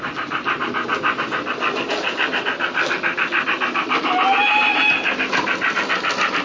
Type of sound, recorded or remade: recorded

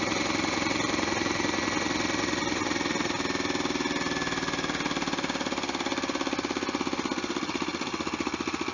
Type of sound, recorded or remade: recorded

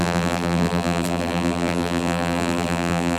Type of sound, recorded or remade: remade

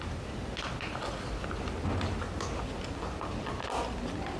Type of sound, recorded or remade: recorded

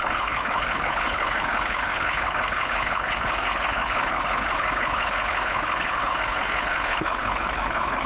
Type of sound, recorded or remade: remade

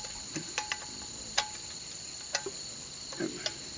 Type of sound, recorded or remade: recorded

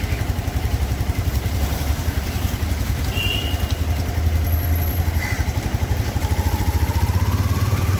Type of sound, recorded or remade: remade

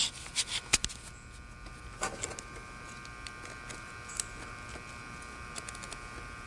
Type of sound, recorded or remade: recorded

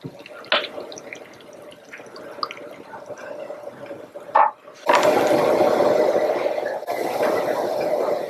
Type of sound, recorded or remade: recorded